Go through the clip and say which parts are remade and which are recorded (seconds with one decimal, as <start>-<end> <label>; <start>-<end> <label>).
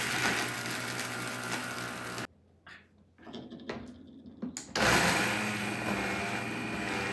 0.0-7.1 recorded